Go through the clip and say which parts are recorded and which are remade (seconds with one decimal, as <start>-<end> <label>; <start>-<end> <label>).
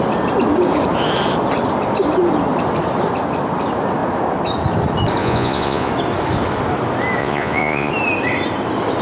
0.0-5.2 recorded; 5.2-5.9 remade; 5.9-7.2 recorded; 7.2-7.9 remade; 7.9-9.0 recorded